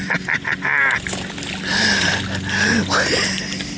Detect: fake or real real